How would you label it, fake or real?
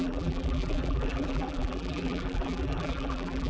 fake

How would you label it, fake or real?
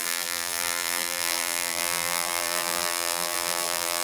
fake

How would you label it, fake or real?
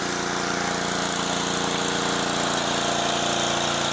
real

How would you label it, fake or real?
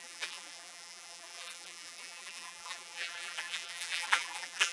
fake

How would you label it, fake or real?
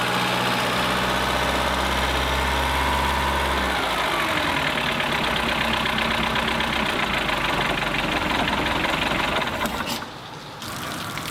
real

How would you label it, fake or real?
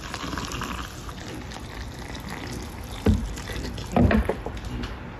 real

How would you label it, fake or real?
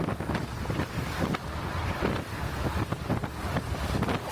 real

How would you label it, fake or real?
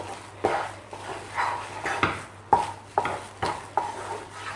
real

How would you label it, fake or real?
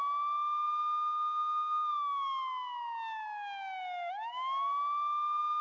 real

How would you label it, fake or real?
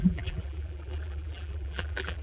fake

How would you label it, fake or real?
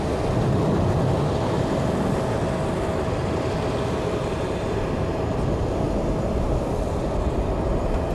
real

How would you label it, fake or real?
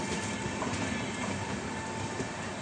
real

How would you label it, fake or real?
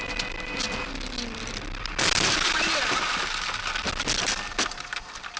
fake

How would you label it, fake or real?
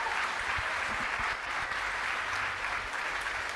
real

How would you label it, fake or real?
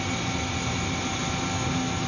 real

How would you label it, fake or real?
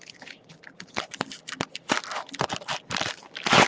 fake